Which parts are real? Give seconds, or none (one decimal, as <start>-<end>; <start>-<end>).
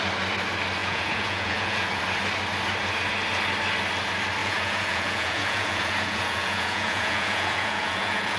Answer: 0.0-0.8; 2.0-4.4